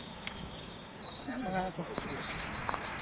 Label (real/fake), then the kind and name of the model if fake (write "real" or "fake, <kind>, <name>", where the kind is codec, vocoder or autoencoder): fake, codec, DAC